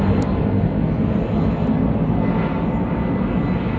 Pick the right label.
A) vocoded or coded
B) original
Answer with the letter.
B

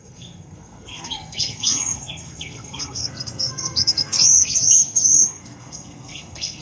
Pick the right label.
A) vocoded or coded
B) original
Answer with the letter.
A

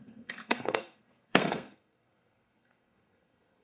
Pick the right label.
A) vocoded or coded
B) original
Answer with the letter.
A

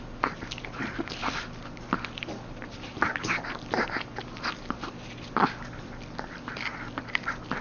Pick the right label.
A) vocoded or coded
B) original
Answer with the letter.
B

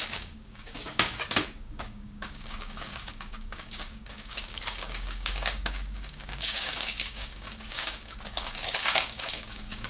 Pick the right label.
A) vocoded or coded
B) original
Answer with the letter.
A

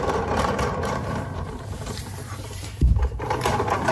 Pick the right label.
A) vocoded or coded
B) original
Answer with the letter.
A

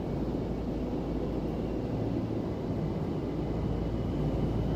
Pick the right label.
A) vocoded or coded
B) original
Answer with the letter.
B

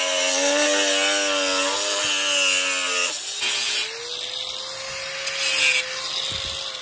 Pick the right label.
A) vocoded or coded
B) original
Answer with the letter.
B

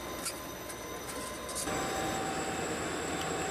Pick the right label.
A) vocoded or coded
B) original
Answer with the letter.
B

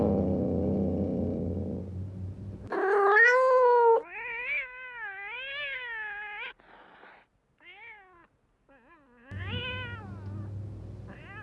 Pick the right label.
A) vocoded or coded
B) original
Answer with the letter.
B